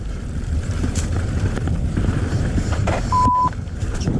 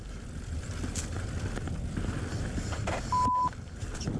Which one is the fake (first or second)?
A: first